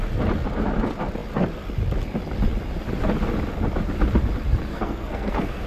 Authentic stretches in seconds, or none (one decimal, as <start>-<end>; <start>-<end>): 0.0-4.7